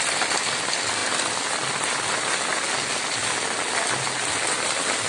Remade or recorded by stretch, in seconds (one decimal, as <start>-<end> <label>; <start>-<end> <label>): 0.0-5.1 recorded